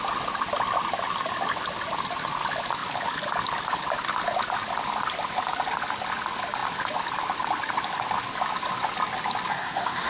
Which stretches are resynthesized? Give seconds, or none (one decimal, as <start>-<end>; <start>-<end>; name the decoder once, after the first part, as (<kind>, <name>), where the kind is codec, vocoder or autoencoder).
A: 9.5-10.1 (codec, SNAC)